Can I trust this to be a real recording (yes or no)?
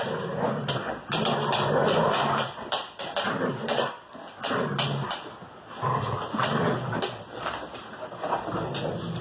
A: yes